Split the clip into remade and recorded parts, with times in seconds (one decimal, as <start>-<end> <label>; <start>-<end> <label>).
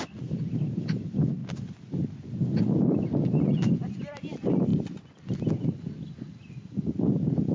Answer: 0.0-7.5 recorded